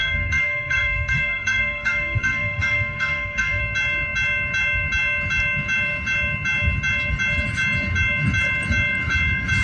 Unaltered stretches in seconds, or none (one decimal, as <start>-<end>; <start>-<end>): 3.6-9.6